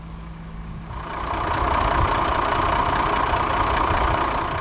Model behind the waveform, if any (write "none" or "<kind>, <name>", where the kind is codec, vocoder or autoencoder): none